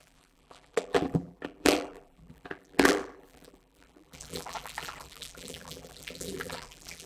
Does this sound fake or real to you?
fake